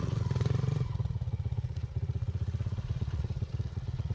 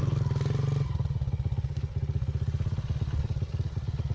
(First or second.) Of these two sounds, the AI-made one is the first